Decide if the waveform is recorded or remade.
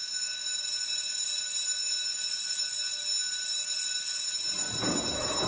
recorded